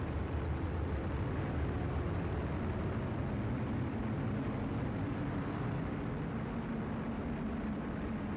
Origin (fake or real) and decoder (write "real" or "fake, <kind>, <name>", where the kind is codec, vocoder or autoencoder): real